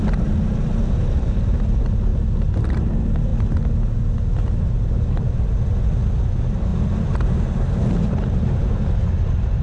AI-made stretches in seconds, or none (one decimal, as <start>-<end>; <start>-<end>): none